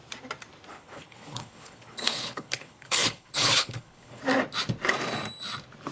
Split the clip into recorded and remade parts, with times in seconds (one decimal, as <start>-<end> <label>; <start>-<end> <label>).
0.0-0.7 recorded; 0.7-4.2 remade; 4.2-5.9 recorded